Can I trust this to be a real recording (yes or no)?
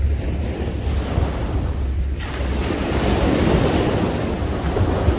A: yes